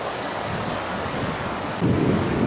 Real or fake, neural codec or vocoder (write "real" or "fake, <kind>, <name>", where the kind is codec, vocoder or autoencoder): fake, codec, DAC